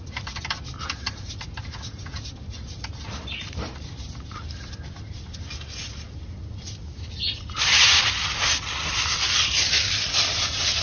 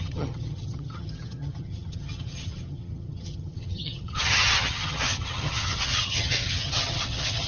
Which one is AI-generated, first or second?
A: second